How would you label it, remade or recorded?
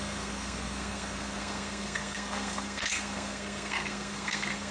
remade